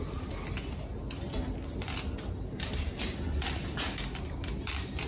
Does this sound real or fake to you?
real